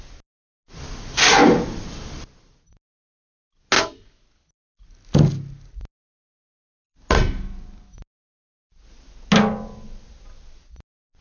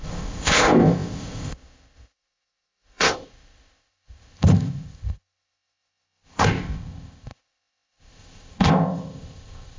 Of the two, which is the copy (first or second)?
second